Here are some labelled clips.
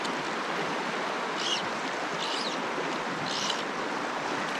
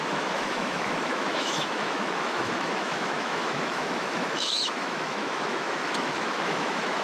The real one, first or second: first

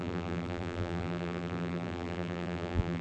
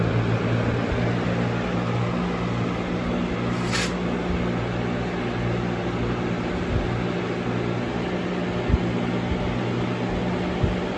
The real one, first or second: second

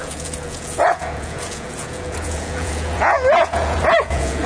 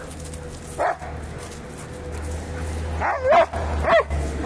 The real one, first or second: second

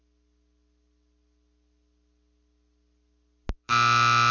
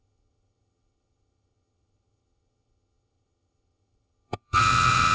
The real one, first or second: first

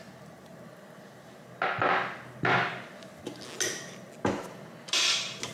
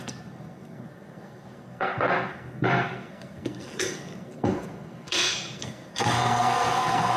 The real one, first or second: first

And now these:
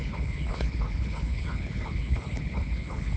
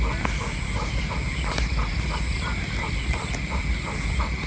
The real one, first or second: second